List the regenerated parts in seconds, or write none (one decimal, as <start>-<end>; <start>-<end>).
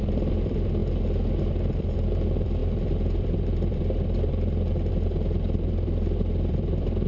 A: 0.0-0.8; 1.4-7.1